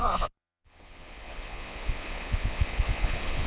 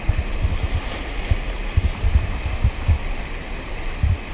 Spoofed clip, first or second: first